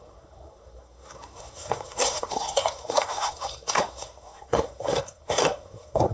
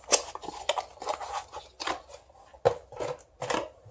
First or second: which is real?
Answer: second